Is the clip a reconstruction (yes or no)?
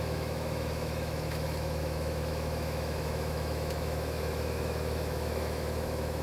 yes